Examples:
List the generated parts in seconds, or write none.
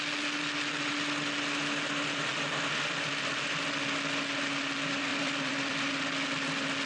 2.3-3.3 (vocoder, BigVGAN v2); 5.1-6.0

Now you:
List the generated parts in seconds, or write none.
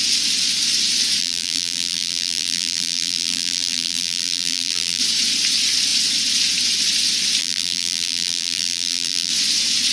1.2-5.0 (vocoder, BigVGAN v2); 7.4-9.3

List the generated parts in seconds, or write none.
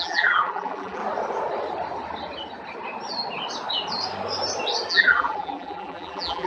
0.0-1.0 (vocoder, BigVGAN v2); 4.9-6.5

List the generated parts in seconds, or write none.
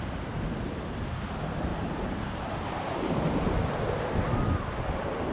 1.7-3.9 (vocoder, BigVGAN v2)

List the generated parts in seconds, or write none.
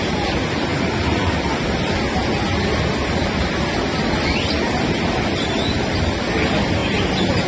none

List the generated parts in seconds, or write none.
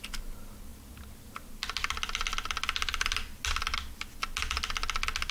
none